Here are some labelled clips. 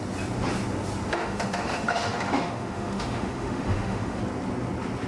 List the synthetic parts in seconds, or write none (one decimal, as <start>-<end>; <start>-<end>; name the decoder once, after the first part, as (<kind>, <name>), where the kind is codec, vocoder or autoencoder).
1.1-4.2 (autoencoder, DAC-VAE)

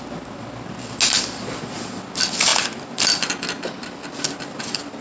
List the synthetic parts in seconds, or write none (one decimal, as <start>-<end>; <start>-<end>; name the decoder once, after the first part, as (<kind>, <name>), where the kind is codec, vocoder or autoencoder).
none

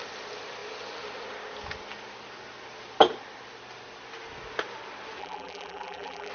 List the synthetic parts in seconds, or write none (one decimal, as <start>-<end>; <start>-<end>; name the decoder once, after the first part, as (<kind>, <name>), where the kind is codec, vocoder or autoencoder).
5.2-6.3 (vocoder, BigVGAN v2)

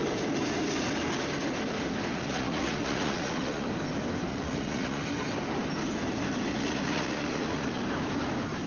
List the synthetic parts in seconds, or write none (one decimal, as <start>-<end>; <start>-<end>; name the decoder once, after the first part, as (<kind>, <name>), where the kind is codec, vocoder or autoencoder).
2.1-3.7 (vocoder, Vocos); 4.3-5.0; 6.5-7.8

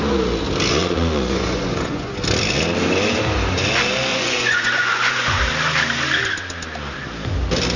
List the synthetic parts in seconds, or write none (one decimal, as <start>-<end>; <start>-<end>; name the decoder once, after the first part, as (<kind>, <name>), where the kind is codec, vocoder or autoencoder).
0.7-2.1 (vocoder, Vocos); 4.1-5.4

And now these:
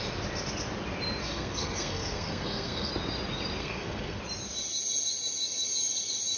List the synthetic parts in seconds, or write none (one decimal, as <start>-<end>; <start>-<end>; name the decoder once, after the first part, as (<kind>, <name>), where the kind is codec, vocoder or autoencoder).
1.2-2.9 (codec, SNAC); 3.6-4.2

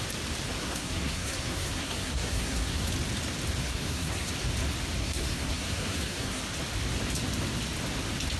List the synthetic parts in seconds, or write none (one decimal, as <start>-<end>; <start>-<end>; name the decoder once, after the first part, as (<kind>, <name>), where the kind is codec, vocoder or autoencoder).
0.6-2.9 (codec, SNAC); 3.6-4.3; 5.0-6.4

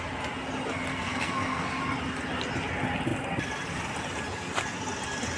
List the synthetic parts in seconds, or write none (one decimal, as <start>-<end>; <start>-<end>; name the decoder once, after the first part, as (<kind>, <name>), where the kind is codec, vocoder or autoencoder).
0.9-1.8 (codec, SNAC)